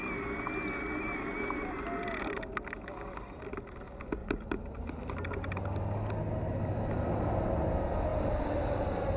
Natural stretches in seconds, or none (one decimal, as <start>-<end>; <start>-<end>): 0.0-4.2; 4.7-8.1